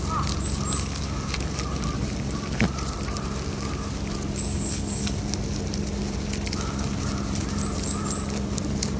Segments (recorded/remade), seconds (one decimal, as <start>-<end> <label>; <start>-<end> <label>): 0.0-4.5 recorded; 4.5-5.2 remade; 5.2-9.0 recorded